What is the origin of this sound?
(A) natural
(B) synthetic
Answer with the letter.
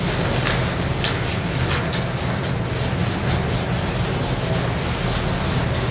A